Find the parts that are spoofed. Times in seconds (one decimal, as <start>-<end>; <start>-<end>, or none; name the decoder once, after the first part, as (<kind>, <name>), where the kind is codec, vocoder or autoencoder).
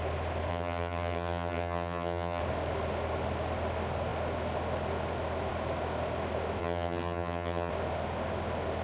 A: 0.5-2.4 (vocoder, HiFi-GAN); 6.6-7.7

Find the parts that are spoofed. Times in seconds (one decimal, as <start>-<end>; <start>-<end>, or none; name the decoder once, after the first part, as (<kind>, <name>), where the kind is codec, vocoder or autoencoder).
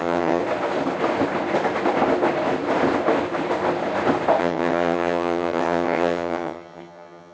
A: 0.0-0.4 (vocoder, HiFi-GAN); 4.4-7.3